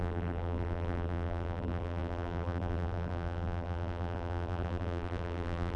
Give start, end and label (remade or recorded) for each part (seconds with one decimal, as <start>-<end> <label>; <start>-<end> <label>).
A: 0.0-5.8 remade